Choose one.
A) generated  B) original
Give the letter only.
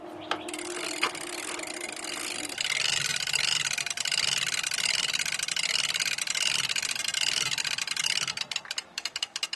B